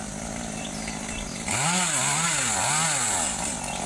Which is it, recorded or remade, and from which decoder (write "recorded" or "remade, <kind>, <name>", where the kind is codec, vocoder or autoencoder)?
recorded